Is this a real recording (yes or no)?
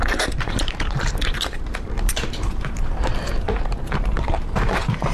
no